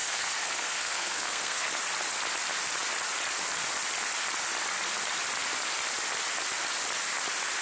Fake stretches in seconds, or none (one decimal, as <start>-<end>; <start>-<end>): 0.0-1.7